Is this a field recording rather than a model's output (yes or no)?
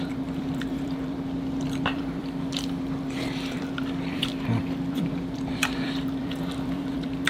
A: no